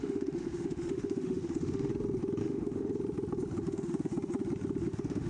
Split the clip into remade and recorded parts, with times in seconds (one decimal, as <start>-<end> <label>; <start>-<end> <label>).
0.0-1.9 remade; 1.9-2.4 recorded; 2.4-2.9 remade; 2.9-3.6 recorded; 3.6-4.1 remade; 4.1-4.8 recorded; 4.8-5.3 remade